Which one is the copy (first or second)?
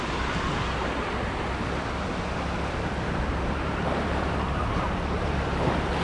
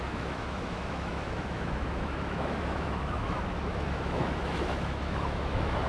second